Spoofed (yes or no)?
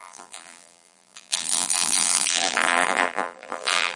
yes